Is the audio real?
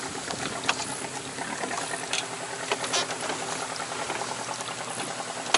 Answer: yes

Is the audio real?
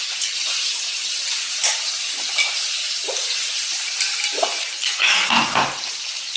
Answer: yes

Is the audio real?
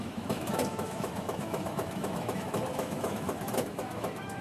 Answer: no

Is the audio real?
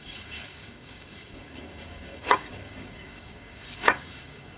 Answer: no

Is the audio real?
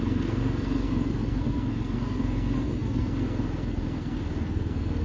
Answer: no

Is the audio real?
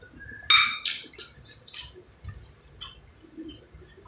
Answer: yes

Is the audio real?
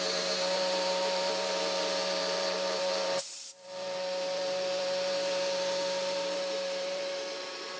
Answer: no